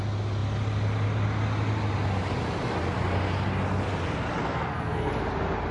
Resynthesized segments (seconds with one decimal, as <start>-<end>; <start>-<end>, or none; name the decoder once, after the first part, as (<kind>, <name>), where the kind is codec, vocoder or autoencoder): 4.4-5.1 (codec, SNAC)